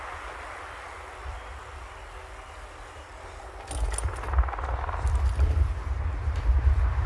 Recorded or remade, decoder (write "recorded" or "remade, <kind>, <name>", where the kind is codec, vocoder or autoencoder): recorded